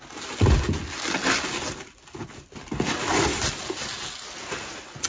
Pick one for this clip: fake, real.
real